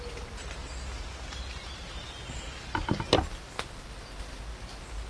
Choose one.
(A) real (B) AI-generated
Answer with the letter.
A